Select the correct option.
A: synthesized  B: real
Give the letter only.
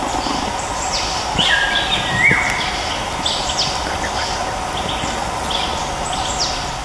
B